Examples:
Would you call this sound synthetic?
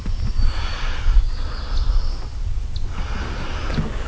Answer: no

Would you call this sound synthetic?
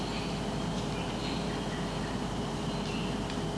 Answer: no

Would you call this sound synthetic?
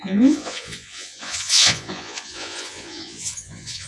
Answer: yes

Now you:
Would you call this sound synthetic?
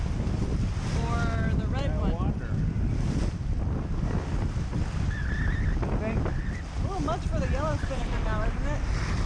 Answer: no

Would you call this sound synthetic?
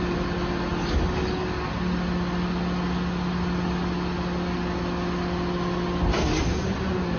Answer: no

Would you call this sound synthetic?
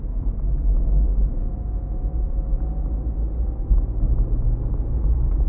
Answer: yes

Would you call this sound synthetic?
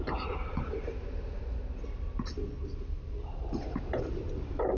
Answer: no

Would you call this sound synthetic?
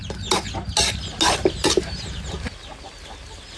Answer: no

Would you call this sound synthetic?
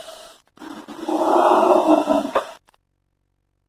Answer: yes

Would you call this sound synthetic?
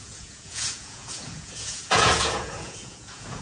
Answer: yes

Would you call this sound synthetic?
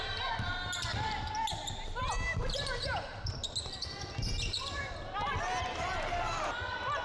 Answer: no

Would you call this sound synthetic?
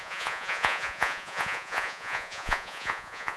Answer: yes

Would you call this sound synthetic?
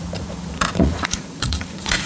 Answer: yes